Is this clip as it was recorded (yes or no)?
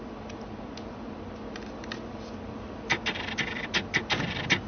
yes